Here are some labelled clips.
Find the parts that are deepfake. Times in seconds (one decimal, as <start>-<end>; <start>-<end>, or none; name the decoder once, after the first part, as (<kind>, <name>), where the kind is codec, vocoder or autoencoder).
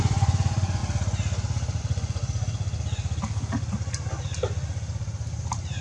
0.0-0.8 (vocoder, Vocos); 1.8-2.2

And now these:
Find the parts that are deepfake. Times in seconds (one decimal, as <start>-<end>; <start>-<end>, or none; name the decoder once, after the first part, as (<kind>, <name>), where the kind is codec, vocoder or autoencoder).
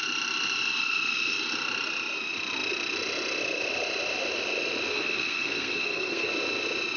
4.9-6.3 (codec, SNAC)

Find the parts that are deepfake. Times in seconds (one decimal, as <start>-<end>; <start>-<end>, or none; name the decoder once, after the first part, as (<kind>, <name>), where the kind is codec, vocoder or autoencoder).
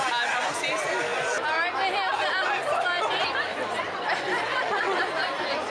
4.5-5.0 (vocoder, WaveNeXt)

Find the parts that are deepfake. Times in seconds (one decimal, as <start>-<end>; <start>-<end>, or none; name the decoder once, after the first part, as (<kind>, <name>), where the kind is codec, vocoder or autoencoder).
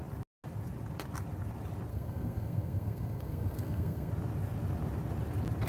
1.9-4.1 (codec, SNAC)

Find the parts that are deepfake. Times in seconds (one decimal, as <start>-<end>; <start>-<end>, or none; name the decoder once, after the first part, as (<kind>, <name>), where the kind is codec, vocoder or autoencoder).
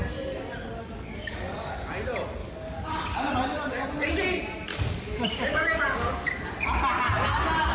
0.7-1.7 (codec, DAC); 2.4-3.3; 4.7-6.5